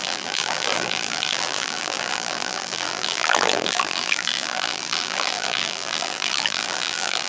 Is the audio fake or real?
fake